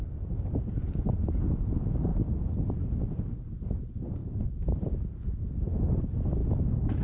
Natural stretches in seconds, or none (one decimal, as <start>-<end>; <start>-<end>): 0.0-4.2; 6.0-6.4